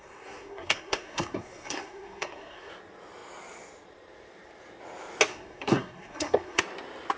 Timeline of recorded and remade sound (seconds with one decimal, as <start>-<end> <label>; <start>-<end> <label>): 0.0-2.7 remade; 2.7-5.3 recorded; 5.3-6.6 remade; 6.6-7.2 recorded